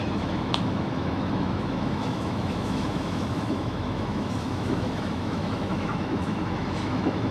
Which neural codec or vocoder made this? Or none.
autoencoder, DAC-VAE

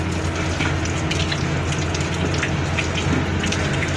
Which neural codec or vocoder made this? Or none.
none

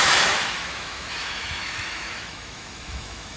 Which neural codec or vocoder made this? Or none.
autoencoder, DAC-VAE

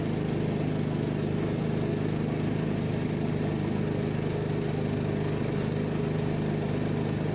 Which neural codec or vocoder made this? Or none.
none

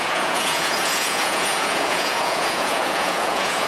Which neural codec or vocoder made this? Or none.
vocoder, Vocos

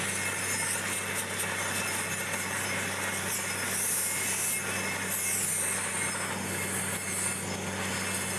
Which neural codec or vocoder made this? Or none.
none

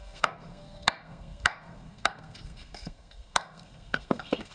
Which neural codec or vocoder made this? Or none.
codec, SNAC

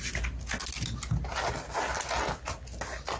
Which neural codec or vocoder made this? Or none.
none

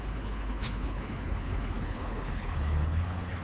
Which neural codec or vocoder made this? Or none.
codec, HILCodec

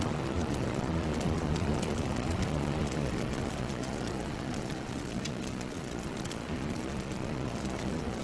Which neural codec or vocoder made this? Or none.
vocoder, Vocos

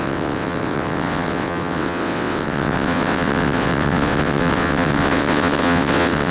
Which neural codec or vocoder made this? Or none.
vocoder, WaveNeXt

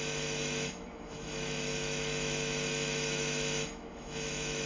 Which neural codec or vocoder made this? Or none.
autoencoder, DAC-VAE